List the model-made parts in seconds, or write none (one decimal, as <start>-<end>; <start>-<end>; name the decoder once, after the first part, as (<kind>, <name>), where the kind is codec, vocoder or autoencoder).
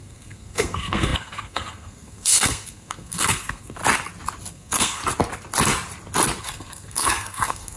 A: 0.0-3.8 (codec, SNAC); 4.5-5.0; 6.4-7.8